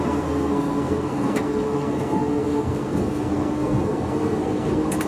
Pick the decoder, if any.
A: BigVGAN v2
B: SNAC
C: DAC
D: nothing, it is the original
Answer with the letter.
B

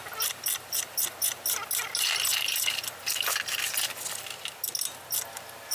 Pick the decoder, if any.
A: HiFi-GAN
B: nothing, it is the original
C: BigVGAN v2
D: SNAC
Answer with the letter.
B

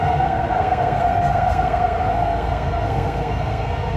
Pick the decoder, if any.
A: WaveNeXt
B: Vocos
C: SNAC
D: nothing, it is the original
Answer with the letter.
C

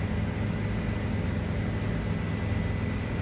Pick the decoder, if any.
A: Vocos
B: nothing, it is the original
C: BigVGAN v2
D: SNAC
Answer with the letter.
B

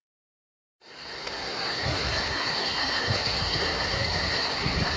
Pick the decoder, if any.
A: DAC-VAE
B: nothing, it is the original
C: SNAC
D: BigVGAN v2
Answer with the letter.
C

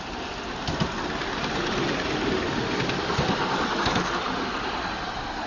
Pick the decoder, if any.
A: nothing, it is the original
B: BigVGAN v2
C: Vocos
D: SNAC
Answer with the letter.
A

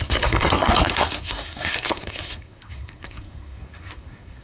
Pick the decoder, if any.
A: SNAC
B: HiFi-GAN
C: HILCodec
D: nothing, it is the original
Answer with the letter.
A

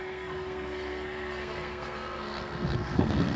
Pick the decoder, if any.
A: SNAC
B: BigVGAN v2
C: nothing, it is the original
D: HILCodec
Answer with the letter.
A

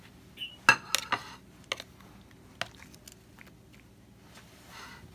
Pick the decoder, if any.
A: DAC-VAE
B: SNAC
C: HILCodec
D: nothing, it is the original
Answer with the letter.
D